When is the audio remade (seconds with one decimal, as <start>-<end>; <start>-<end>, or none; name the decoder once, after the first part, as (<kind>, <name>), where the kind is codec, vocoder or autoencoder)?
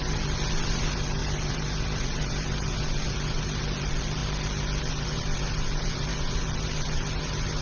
0.0-4.2 (vocoder, BigVGAN v2); 4.8-7.6